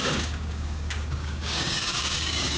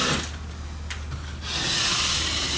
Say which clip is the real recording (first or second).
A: second